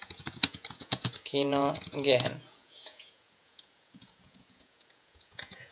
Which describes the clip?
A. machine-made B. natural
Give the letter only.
A